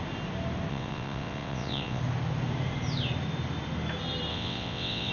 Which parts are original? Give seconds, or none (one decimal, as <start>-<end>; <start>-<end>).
0.0-0.7; 2.0-4.3